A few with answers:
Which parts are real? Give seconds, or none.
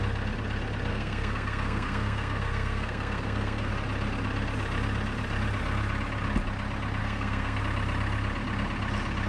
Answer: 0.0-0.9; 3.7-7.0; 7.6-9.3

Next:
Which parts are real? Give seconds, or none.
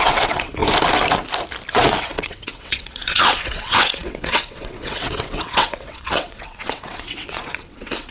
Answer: 0.6-1.7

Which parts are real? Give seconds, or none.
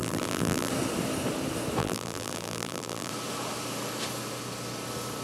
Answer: 0.7-1.8; 3.1-5.2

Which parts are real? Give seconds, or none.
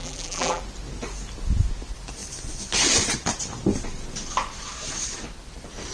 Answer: 0.6-5.9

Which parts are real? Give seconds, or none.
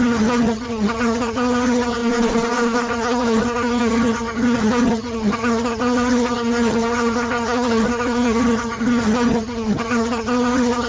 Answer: 2.0-2.9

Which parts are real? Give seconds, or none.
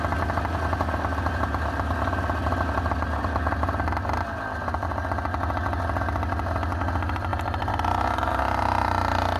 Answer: 0.0-9.4